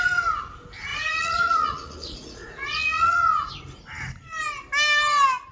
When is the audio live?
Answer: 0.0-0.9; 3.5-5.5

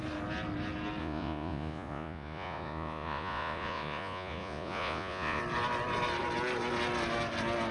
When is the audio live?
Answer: 0.0-1.0; 5.4-7.7

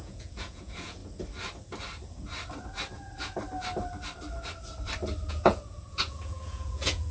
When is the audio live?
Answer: 1.0-5.3

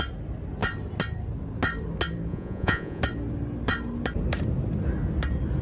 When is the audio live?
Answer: 0.0-2.3; 3.0-5.6